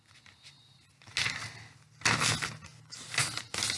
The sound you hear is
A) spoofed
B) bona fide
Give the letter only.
B